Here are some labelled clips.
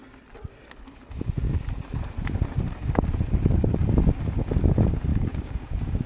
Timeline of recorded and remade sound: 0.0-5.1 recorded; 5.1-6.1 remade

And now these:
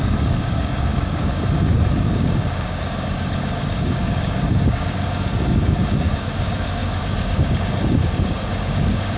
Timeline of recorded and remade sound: 0.0-9.2 remade

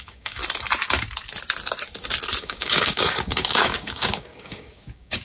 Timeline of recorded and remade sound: 0.0-0.4 remade; 0.4-2.4 recorded; 2.4-5.2 remade

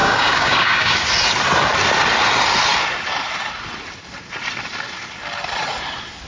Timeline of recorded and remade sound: 0.0-1.1 remade; 1.1-6.3 recorded